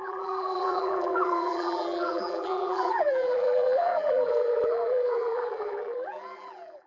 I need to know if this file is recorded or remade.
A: remade